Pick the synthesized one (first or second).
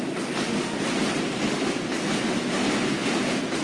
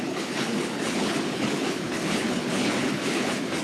second